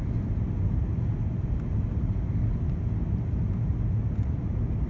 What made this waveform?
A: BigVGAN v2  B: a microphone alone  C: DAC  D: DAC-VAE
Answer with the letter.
B